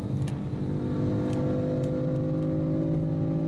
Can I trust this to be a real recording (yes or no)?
yes